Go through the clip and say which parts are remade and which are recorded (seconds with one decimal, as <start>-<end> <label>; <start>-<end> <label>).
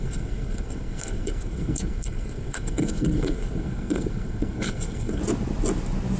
0.0-5.2 remade; 5.2-6.2 recorded